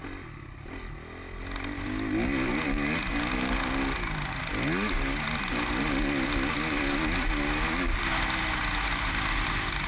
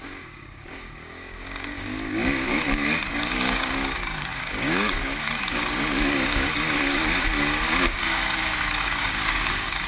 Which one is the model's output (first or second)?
second